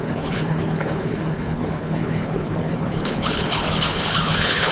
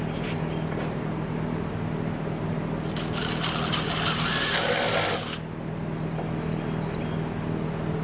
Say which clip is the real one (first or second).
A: second